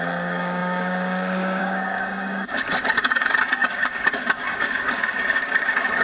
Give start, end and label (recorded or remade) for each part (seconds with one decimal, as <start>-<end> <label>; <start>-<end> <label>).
0.0-6.0 remade